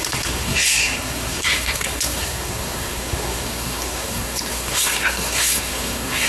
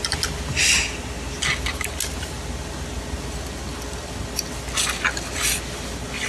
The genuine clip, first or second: second